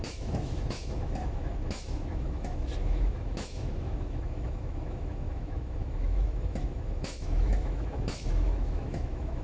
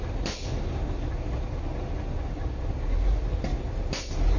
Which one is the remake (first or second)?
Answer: first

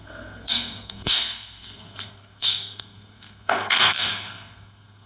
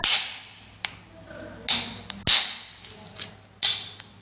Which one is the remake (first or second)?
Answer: first